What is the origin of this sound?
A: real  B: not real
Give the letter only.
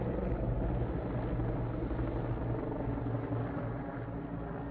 A